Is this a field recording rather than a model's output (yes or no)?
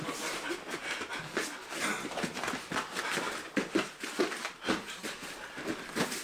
yes